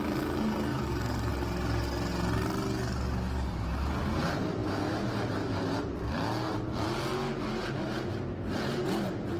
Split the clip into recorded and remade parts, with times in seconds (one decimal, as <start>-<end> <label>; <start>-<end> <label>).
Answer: 0.0-0.7 recorded; 0.7-1.3 remade; 1.3-9.4 recorded